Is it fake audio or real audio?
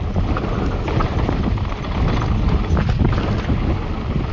real